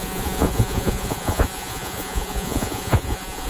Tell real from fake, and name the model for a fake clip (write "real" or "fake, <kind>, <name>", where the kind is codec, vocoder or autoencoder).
fake, vocoder, Vocos